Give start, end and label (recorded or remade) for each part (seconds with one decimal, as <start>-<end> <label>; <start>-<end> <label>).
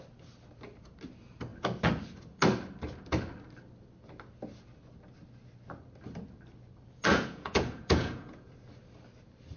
0.0-7.1 recorded; 7.1-8.5 remade; 8.5-9.6 recorded